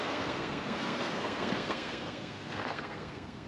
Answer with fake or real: fake